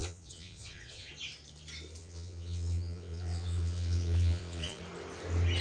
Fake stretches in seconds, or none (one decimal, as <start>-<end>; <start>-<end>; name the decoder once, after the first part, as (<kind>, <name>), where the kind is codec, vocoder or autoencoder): 0.0-1.1 (vocoder, Vocos); 2.0-4.8

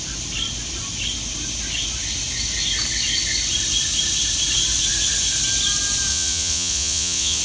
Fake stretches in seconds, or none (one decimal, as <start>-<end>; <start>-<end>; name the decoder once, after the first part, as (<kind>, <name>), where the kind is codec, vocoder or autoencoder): 6.1-7.4 (vocoder, Vocos)

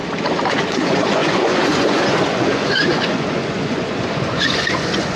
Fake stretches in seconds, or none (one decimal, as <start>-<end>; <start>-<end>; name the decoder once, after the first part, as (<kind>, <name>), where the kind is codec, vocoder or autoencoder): 0.5-5.2 (vocoder, Vocos)

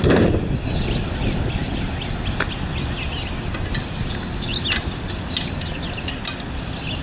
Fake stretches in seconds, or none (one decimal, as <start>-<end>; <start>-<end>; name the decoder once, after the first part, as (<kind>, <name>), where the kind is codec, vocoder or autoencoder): none

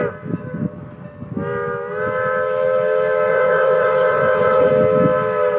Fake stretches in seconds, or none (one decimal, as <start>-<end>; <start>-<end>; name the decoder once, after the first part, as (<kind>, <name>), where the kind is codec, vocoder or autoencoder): 3.3-4.7 (vocoder, Vocos)